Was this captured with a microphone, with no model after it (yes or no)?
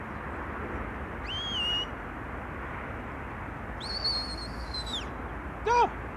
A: yes